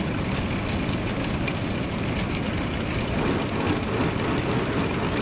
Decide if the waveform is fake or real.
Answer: real